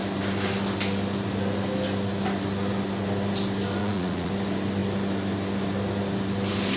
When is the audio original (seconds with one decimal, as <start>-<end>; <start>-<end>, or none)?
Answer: 0.0-3.8; 4.3-6.8

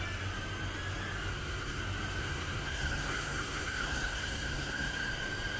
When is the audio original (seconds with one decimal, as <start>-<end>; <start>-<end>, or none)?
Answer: 0.0-1.3; 1.8-2.2; 5.1-5.6

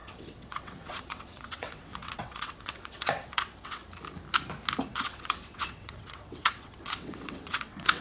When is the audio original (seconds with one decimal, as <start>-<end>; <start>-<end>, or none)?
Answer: 3.8-4.9

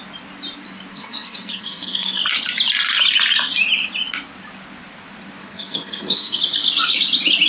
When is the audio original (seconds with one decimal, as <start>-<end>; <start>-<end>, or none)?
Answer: 0.0-0.9; 2.2-5.4; 6.4-7.5

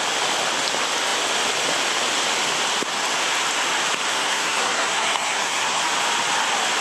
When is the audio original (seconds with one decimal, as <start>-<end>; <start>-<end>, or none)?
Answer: 0.0-4.1; 5.8-6.8

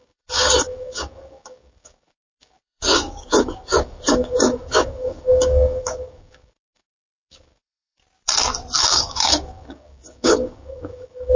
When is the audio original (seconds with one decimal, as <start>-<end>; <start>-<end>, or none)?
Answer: 8.0-8.8

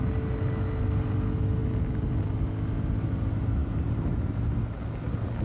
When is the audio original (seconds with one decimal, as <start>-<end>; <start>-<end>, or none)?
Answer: 0.0-3.6; 4.6-5.4